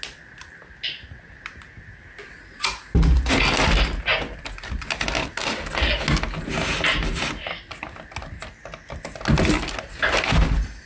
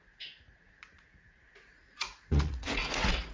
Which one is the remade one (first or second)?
second